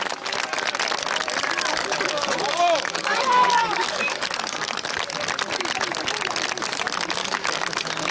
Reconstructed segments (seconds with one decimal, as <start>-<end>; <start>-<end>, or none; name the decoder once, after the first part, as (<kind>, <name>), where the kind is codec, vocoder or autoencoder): 1.7-4.9 (codec, DAC); 7.2-8.1

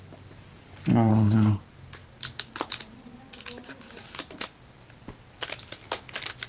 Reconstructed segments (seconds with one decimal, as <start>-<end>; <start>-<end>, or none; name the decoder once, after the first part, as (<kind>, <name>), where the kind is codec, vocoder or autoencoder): 1.1-1.6 (codec, HILCodec)

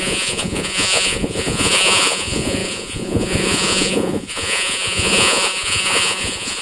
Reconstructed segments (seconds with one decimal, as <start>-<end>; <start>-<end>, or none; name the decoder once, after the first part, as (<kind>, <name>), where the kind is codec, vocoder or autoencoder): 0.0-6.6 (vocoder, Vocos)

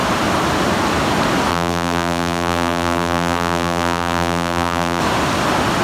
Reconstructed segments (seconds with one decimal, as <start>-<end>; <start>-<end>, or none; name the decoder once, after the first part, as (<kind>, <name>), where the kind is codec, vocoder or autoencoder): 1.5-5.0 (vocoder, BigVGAN v2)

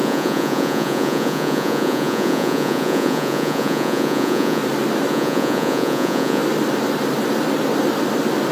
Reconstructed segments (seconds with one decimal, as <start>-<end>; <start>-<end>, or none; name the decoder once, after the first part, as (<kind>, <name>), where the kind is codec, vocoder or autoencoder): 0.0-4.6 (vocoder, Vocos); 5.1-6.4

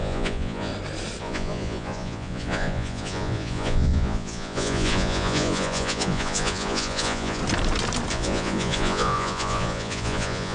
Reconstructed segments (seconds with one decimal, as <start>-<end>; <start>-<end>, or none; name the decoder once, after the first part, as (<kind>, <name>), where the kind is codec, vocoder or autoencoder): 0.0-0.7 (vocoder, Vocos); 1.2-7.4; 8.1-10.5

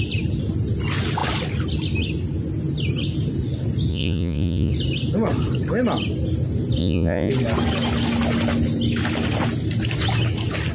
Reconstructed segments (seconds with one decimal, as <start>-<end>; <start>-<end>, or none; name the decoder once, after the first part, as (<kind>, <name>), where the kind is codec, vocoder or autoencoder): 3.9-4.7 (vocoder, Vocos); 6.8-7.3